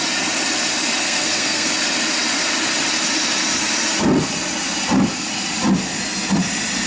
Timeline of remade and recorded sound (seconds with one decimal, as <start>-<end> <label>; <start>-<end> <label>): 0.0-1.0 recorded; 1.0-1.7 remade; 1.7-6.9 recorded